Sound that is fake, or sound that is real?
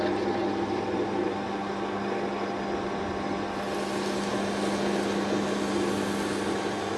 real